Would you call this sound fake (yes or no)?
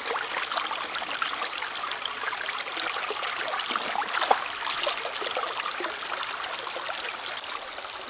no